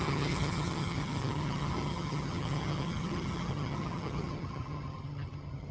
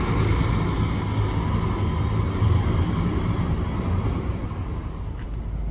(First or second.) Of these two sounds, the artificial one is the first